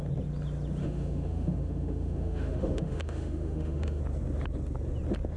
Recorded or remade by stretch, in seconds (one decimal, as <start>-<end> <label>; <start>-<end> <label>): 0.0-0.8 recorded; 0.8-4.0 remade; 4.0-5.4 recorded